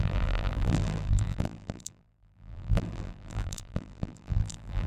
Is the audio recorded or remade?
remade